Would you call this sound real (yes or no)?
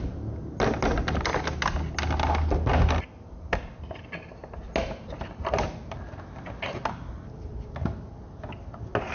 yes